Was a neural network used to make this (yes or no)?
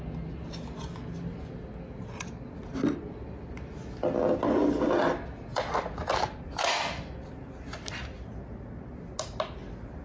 no